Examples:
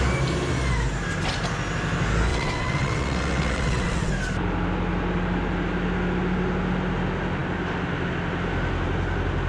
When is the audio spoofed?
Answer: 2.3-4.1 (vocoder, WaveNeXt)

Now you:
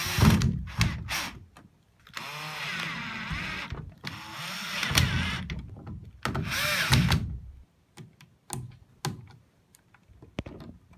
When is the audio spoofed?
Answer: none

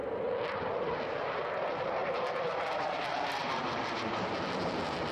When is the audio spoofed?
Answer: 0.0-0.6 (vocoder, BigVGAN v2); 2.0-4.2

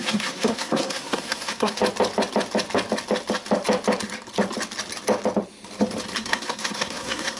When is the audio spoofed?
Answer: 0.0-1.8 (codec, SNAC); 6.2-7.4

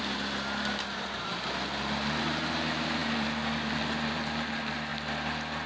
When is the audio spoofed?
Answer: 0.0-4.9 (vocoder, BigVGAN v2)

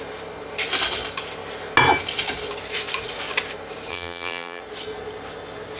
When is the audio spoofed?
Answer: 3.9-4.6 (vocoder, BigVGAN v2)

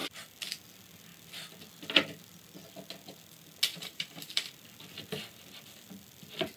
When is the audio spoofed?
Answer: 3.7-4.5 (vocoder, BigVGAN v2)